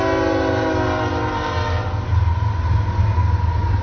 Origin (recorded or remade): recorded